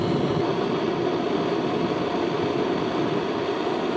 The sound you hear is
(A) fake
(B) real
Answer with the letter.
B